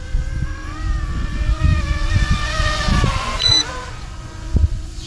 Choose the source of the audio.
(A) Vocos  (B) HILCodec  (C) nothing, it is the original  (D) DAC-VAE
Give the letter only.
A